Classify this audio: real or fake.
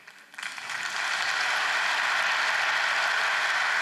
real